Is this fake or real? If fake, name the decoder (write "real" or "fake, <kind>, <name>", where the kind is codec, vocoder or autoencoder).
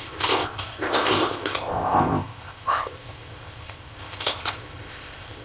fake, codec, ZipCodec